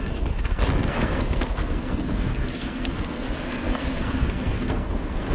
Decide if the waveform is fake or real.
fake